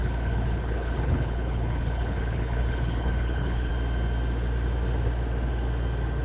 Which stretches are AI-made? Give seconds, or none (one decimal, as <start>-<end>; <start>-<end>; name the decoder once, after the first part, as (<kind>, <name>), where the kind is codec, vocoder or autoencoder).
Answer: 0.0-3.7 (codec, HILCodec)